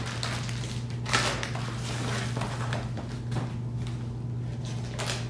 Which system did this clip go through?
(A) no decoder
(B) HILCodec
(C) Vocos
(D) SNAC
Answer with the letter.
A